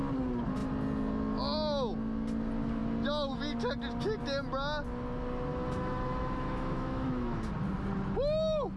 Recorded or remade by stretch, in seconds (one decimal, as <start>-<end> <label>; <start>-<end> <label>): 0.0-5.5 recorded; 5.5-7.5 remade; 7.5-8.8 recorded